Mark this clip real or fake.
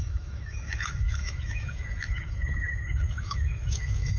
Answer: fake